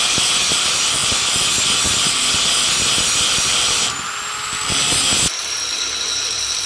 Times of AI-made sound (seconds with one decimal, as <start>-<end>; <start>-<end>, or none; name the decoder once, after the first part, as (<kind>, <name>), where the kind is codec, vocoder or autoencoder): none